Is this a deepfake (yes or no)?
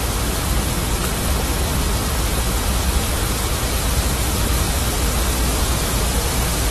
no